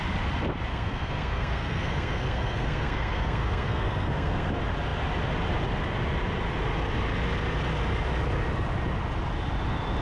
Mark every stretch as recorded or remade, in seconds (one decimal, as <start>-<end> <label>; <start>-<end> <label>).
0.0-0.7 recorded; 0.7-4.5 remade; 4.5-10.0 recorded

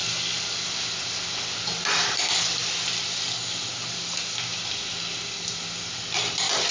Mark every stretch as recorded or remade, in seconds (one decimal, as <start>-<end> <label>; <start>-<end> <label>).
0.0-6.7 recorded

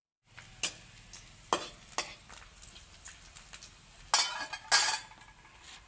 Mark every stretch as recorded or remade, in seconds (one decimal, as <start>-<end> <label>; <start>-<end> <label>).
0.0-5.9 recorded

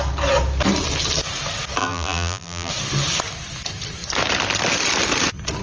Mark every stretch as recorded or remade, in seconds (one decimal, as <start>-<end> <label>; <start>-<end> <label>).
0.0-1.8 recorded; 1.8-2.7 remade; 2.7-5.6 recorded

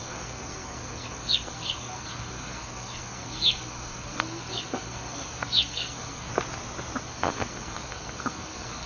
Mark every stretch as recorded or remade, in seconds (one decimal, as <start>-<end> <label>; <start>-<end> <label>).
0.0-6.3 remade; 6.3-7.0 recorded; 7.0-8.9 remade

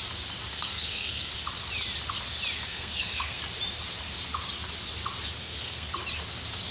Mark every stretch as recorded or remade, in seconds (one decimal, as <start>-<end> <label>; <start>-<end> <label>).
0.0-0.5 recorded; 0.5-1.3 remade; 1.3-2.7 recorded; 2.7-3.4 remade; 3.4-5.4 recorded; 5.4-5.9 remade; 5.9-6.7 recorded

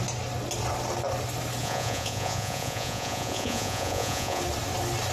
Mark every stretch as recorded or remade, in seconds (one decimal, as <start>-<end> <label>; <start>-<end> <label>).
0.0-1.6 recorded; 1.6-4.4 remade; 4.4-5.1 recorded

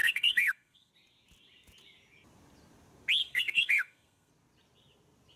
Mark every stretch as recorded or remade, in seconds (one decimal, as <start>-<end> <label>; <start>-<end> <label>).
0.0-0.9 remade; 0.9-3.2 recorded; 3.2-4.3 remade; 4.3-5.4 recorded